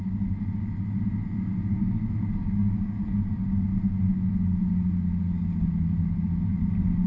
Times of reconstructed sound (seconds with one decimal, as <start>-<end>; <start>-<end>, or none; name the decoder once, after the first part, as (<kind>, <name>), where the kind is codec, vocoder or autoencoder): 2.4-3.0 (codec, DAC)